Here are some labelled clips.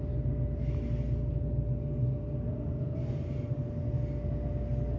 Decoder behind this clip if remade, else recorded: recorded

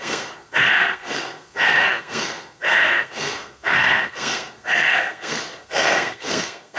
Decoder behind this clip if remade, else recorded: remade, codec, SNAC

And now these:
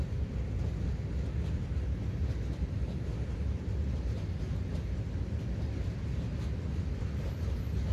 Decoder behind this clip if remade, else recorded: recorded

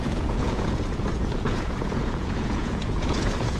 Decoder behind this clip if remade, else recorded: remade, vocoder, Vocos